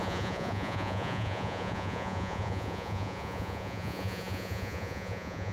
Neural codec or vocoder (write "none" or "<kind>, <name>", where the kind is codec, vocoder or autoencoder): vocoder, Vocos